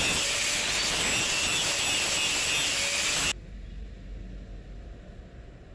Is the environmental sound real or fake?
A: real